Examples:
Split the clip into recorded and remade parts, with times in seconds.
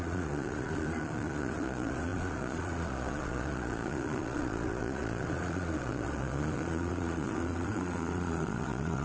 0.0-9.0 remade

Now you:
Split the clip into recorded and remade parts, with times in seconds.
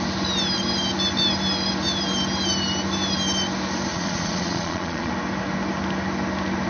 0.0-3.9 recorded; 3.9-5.1 remade; 5.1-6.7 recorded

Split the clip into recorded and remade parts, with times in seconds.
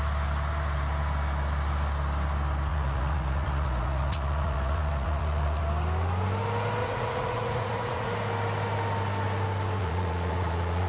0.0-2.7 recorded; 2.7-5.6 remade; 5.6-6.8 recorded; 6.8-8.1 remade; 8.1-9.8 recorded; 9.8-10.9 remade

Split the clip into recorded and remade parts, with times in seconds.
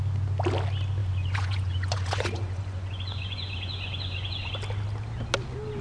0.0-1.0 recorded; 1.0-4.5 remade; 4.5-5.8 recorded